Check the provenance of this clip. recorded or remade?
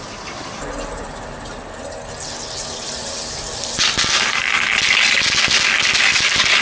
recorded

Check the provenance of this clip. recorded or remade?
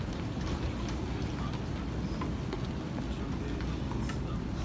recorded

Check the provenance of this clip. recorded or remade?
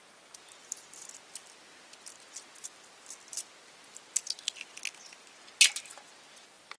recorded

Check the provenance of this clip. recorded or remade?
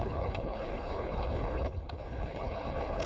remade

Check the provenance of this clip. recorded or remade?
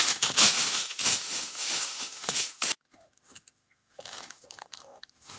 remade